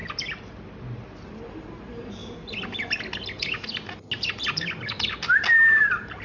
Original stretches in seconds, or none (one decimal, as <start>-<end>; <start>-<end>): 0.0-1.5; 2.2-5.8